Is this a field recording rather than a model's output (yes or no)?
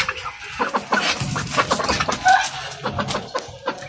yes